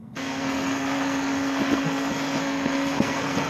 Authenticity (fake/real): fake